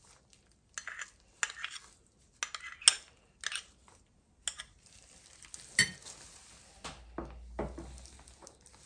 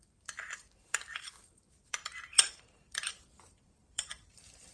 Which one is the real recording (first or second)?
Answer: first